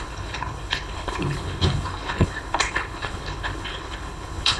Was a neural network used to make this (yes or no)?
yes